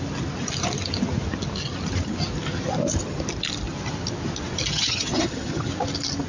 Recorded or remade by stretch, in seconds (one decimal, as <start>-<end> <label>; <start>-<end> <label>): 0.0-4.7 recorded; 4.7-5.7 remade; 5.7-6.3 recorded